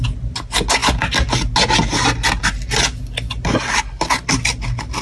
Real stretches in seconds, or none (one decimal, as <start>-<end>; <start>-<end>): 0.0-5.0